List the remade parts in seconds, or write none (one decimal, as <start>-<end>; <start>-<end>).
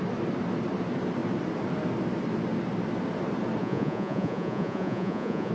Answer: 3.6-5.5